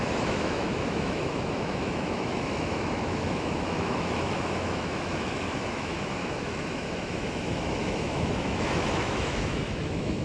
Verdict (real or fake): fake